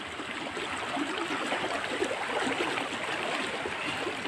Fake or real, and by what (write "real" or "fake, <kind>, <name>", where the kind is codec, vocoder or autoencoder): real